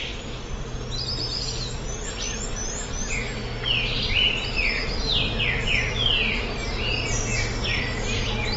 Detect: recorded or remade remade